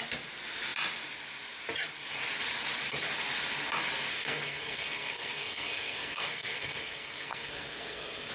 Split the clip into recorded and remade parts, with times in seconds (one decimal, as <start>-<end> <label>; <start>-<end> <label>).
0.0-4.1 recorded; 4.1-8.3 remade